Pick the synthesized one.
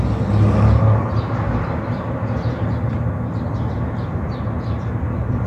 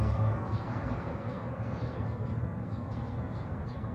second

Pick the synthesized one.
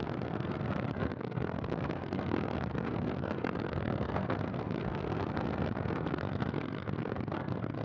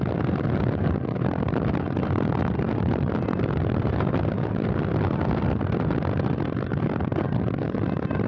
first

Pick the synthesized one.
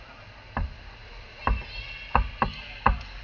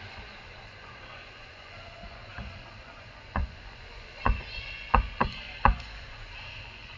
second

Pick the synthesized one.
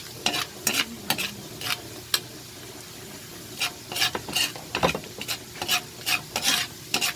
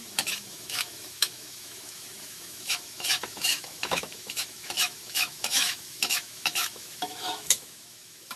second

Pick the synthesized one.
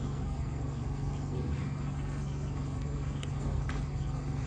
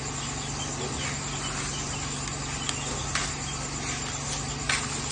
first